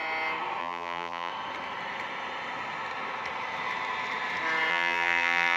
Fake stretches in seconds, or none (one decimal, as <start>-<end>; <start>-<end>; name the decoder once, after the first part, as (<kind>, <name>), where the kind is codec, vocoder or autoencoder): 0.6-1.3 (vocoder, BigVGAN v2); 4.7-5.6